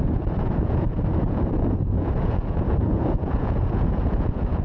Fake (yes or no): yes